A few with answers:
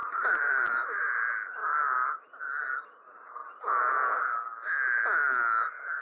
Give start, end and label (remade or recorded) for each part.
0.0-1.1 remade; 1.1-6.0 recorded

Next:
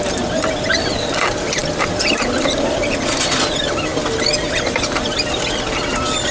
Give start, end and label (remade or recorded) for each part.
0.0-1.6 remade; 1.6-2.2 recorded; 2.2-3.9 remade; 3.9-4.4 recorded; 4.4-6.3 remade